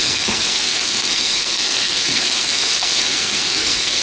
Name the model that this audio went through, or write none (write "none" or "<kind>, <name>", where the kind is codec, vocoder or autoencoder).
codec, SNAC